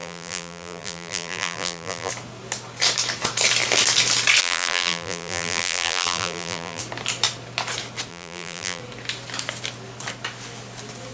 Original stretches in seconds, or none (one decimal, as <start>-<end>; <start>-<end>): 2.1-4.4; 6.8-8.1; 8.8-11.1